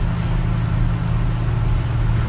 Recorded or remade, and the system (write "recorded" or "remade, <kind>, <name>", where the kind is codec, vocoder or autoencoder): recorded